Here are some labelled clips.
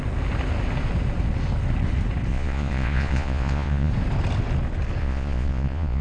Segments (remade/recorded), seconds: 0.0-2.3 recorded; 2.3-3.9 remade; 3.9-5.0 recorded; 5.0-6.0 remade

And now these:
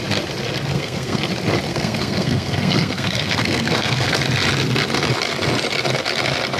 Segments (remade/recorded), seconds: 0.0-0.7 recorded; 0.7-1.2 remade; 1.2-1.7 recorded; 1.7-4.2 remade; 4.2-6.6 recorded

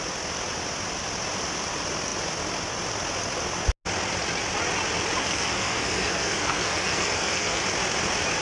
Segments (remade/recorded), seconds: 0.0-5.2 recorded; 5.2-7.6 remade; 7.6-8.4 recorded

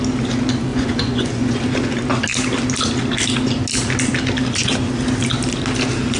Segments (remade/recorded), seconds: 0.0-0.7 recorded; 0.7-1.6 remade; 1.6-6.2 recorded

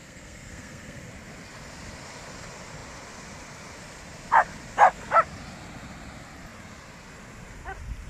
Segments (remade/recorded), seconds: 0.0-1.1 remade; 1.1-8.1 recorded

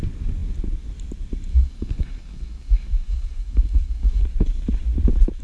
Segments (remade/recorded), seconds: 0.0-1.5 recorded; 1.5-4.2 remade; 4.2-5.4 recorded

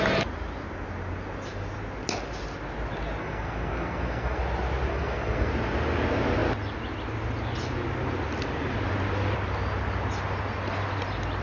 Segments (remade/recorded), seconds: 0.0-3.2 recorded; 3.2-4.4 remade; 4.4-4.9 recorded; 4.9-5.5 remade; 5.5-11.4 recorded

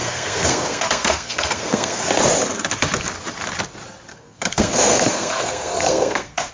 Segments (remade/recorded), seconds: 0.0-2.1 remade; 2.1-4.1 recorded; 4.1-6.5 remade